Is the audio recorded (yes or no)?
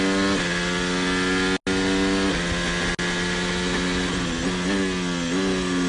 yes